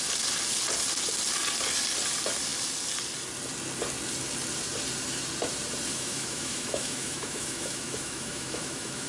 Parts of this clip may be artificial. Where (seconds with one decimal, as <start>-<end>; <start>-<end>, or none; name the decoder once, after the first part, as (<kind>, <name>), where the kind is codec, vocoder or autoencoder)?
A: 5.9-9.1 (autoencoder, DAC-VAE)